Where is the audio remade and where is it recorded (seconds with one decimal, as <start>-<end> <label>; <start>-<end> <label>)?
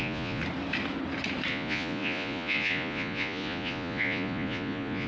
0.0-0.4 remade; 0.4-1.5 recorded; 1.5-5.1 remade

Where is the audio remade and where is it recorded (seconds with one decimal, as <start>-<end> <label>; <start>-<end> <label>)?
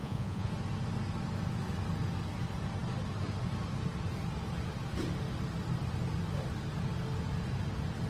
0.0-0.5 remade; 0.5-8.1 recorded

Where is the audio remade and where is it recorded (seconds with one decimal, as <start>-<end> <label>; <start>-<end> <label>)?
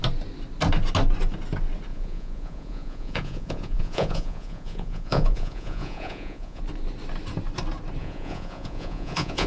0.0-1.9 recorded; 1.9-6.6 remade; 6.6-8.0 recorded; 8.0-9.5 remade